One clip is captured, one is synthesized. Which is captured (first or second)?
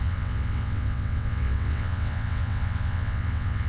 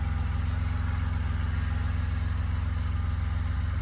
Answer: second